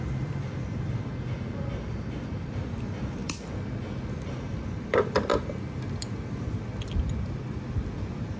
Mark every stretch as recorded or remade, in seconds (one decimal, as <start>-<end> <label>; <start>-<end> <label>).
0.0-1.1 remade; 1.1-2.5 recorded; 2.5-3.2 remade; 3.2-4.1 recorded; 4.1-8.4 remade